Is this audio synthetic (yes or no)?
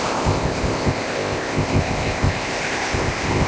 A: yes